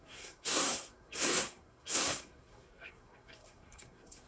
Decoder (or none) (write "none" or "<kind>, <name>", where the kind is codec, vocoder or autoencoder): codec, SNAC